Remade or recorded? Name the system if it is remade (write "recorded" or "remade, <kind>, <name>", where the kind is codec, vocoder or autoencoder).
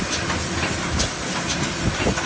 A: recorded